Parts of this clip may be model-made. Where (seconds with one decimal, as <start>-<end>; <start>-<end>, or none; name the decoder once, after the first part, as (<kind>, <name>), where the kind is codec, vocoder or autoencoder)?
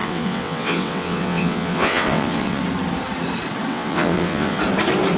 0.0-2.6 (vocoder, WaveNeXt); 3.7-4.6